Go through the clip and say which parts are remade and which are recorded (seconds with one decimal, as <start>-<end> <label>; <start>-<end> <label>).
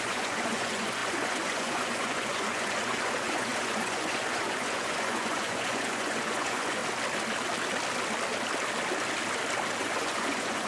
0.0-6.8 remade; 6.8-9.8 recorded; 9.8-10.7 remade